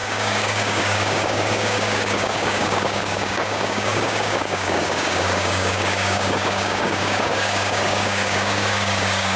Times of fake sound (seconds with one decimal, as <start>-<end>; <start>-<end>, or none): 0.0-9.4